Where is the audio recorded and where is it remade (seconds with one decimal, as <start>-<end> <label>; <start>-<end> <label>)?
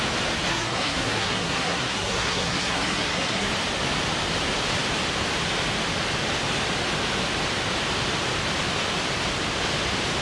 0.0-0.5 recorded; 0.5-3.5 remade; 3.5-10.2 recorded